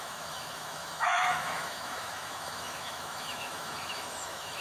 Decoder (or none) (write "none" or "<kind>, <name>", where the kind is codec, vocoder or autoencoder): autoencoder, DAC-VAE